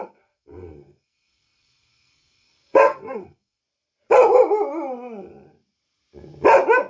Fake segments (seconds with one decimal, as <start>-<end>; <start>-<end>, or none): 0.0-3.6